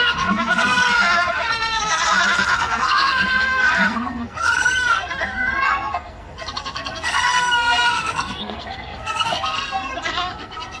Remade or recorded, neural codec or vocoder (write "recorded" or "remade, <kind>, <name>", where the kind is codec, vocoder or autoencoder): remade, codec, SNAC